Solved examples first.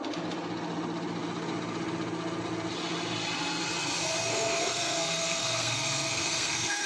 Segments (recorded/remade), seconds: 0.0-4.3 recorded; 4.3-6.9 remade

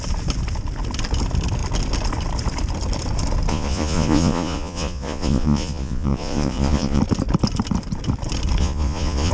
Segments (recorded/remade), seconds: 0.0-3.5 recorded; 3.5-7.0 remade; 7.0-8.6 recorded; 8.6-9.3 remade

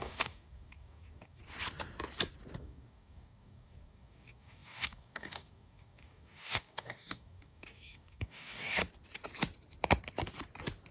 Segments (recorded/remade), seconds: 0.0-1.4 remade; 1.4-2.6 recorded; 2.6-8.8 remade; 8.8-10.9 recorded